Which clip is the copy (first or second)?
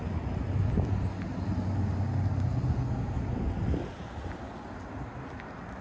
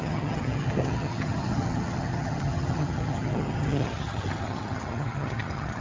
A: second